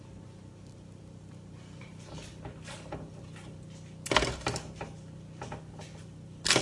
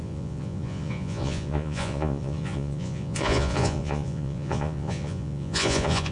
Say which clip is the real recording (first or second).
first